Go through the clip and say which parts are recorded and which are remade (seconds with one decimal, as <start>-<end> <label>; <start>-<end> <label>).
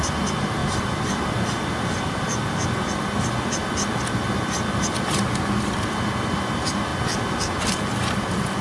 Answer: 0.0-8.6 recorded